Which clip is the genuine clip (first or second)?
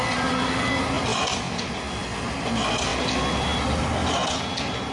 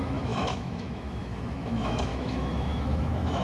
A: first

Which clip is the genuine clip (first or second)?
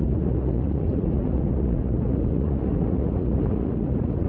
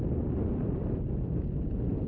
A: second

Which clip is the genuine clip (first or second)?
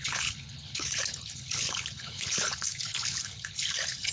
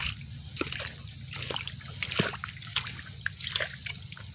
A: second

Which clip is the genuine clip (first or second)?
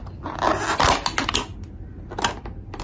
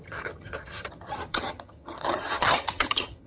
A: first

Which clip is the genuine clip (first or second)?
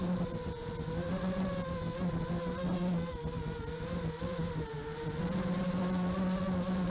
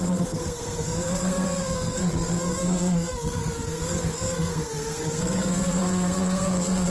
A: first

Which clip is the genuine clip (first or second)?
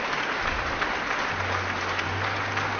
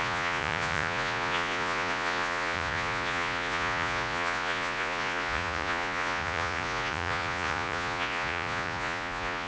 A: first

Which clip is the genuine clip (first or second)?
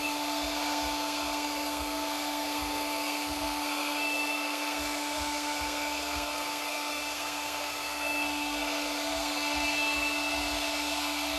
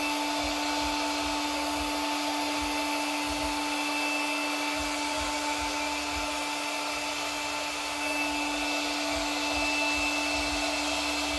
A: second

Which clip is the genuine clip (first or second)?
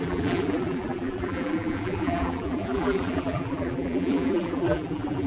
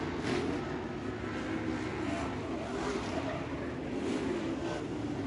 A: second